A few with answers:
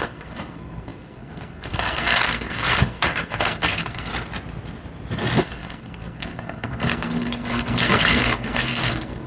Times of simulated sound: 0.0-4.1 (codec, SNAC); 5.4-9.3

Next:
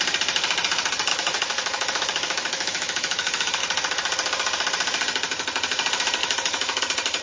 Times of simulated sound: 1.1-3.6 (autoencoder, DAC-VAE); 6.2-6.8